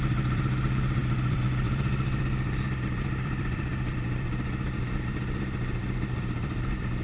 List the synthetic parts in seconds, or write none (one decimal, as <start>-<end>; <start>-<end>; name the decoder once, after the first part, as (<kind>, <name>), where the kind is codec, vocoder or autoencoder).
0.0-7.0 (vocoder, BigVGAN v2)